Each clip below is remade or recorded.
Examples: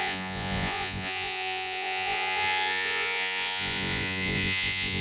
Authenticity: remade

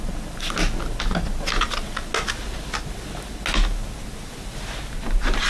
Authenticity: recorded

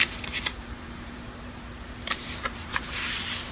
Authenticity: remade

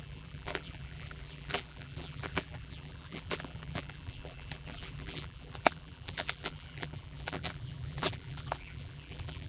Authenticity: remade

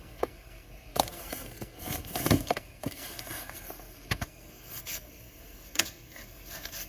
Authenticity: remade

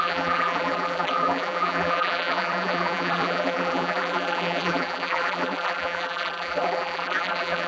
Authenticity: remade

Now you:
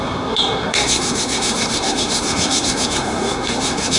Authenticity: remade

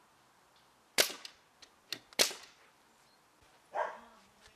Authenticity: recorded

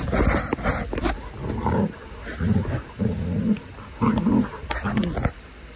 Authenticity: recorded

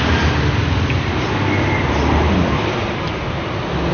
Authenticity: recorded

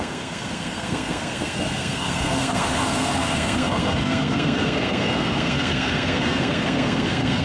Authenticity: remade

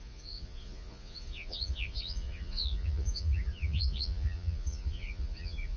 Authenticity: remade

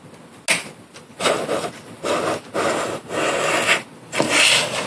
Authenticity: recorded